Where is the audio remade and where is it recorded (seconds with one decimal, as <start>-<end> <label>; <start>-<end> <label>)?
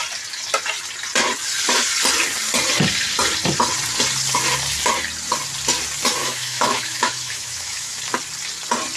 0.0-6.2 recorded; 6.2-8.0 remade; 8.0-9.0 recorded